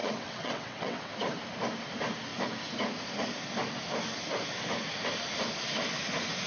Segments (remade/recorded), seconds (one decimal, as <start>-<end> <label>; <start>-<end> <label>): 0.0-1.1 remade; 1.1-6.5 recorded